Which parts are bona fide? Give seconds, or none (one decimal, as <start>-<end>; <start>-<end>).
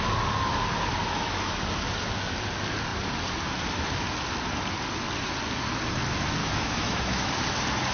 0.0-1.0; 1.6-6.4; 7.3-7.9